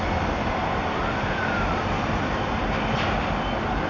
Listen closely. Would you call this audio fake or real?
fake